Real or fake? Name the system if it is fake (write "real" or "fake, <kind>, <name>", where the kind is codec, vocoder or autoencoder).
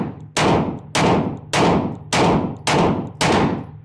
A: real